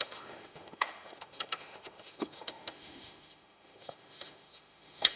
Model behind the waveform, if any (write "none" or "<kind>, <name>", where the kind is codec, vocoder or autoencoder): autoencoder, DAC-VAE